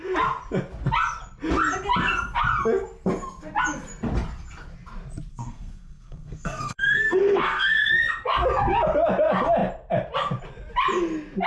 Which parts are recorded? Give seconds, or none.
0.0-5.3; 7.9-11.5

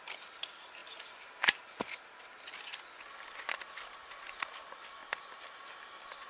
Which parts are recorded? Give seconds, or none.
0.0-6.3

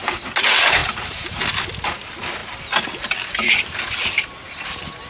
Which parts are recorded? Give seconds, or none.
0.0-5.1

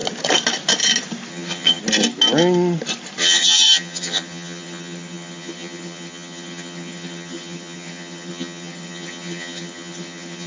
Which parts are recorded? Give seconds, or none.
0.0-1.3; 1.8-3.2

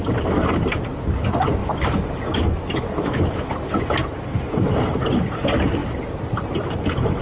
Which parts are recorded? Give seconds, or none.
0.0-1.6; 3.8-7.2

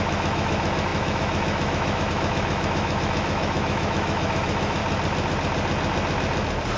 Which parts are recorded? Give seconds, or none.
4.8-6.8

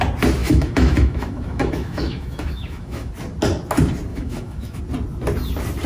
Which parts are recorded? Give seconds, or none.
0.0-0.4; 3.1-4.1; 4.8-5.9